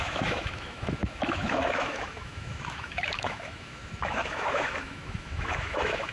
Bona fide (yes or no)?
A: no